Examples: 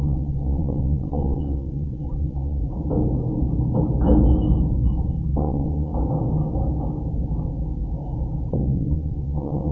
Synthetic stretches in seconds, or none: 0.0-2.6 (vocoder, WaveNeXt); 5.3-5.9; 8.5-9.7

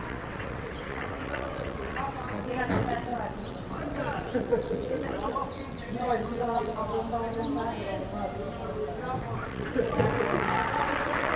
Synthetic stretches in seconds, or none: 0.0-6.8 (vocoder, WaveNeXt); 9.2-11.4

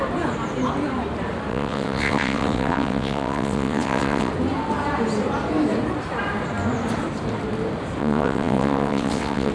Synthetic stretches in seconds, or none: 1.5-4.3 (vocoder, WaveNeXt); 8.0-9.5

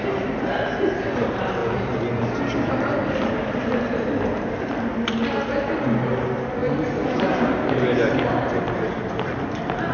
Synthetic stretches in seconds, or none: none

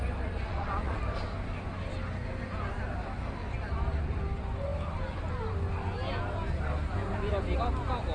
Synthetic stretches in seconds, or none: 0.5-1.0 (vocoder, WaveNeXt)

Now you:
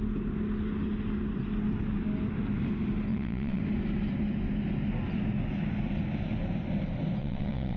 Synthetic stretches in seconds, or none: 3.1-3.6 (vocoder, WaveNeXt); 7.2-7.8